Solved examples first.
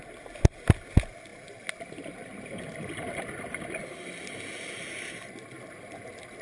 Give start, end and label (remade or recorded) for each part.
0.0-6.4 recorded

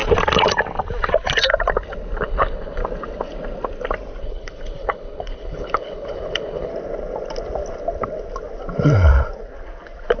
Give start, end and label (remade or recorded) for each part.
0.0-2.2 recorded; 2.2-2.8 remade; 2.8-4.2 recorded; 4.2-6.7 remade; 6.7-10.2 recorded

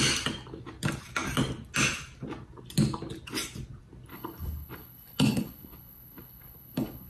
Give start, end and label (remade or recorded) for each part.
0.0-4.1 recorded; 4.1-7.1 remade

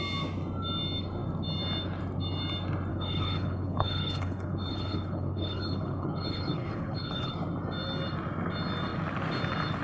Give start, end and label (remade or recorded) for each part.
0.0-2.9 recorded; 2.9-7.3 remade; 7.3-9.8 recorded

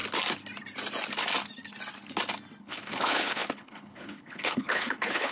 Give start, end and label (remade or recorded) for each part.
0.0-2.6 recorded; 2.6-5.3 remade